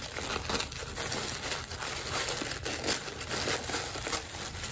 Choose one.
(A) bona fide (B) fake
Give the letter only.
A